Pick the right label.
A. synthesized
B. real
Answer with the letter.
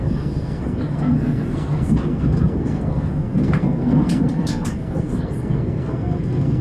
A